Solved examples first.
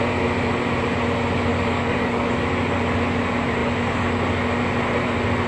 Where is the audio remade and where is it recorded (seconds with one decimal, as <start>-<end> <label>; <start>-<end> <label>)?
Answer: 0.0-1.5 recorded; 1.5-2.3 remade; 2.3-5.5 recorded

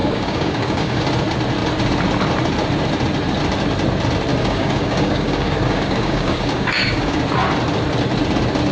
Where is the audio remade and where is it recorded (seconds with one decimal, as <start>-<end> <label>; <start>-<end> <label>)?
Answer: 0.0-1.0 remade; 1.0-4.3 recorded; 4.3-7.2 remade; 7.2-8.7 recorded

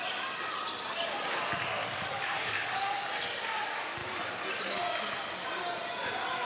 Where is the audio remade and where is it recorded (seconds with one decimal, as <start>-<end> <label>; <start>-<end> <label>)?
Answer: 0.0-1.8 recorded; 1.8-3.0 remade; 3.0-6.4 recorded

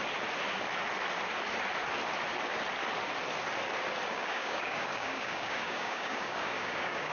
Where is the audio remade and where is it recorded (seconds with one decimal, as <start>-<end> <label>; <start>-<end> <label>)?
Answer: 0.0-4.1 recorded; 4.1-7.1 remade

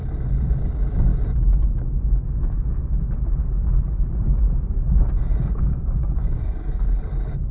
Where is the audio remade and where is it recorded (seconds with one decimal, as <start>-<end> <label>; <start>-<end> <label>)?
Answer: 0.0-0.7 recorded; 0.7-1.1 remade; 1.1-5.6 recorded; 5.6-7.5 remade